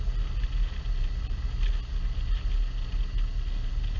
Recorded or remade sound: recorded